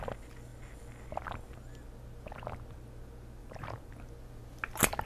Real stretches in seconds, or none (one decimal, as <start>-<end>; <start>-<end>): 0.0-3.4; 3.9-5.1